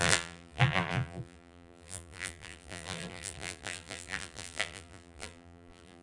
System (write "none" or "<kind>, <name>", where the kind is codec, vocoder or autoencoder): vocoder, BigVGAN v2